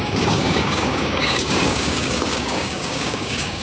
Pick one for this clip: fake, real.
fake